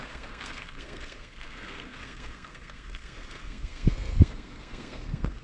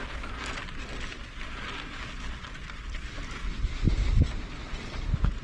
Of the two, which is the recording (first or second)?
second